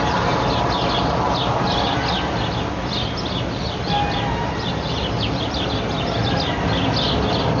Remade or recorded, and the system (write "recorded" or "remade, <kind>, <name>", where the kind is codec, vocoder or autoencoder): recorded